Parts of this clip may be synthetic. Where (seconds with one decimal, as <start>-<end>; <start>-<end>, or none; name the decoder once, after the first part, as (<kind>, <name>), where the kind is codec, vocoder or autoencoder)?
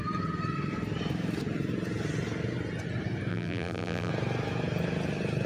3.3-4.1 (vocoder, BigVGAN v2)